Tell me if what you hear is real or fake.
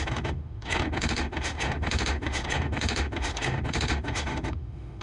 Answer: fake